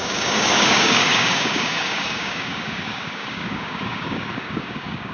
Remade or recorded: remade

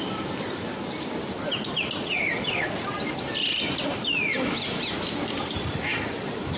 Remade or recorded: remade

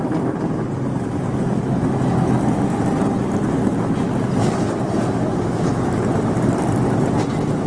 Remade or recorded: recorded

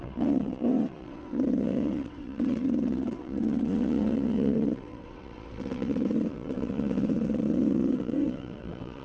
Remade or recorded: remade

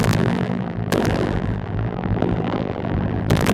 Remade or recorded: remade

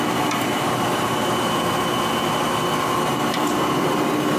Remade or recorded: recorded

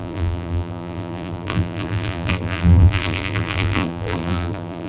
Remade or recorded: remade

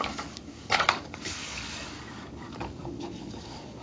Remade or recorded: remade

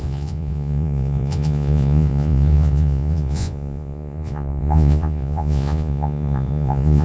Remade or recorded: remade